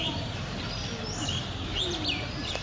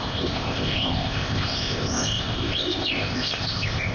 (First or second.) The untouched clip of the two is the first